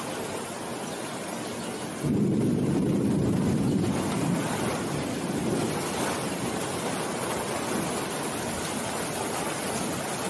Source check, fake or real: real